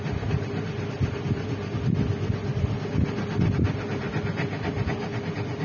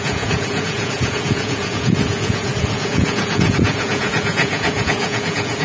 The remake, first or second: second